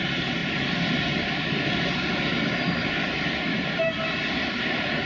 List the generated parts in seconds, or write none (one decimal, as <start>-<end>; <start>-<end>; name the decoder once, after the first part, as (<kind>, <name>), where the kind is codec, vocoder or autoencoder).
0.0-5.1 (vocoder, BigVGAN v2)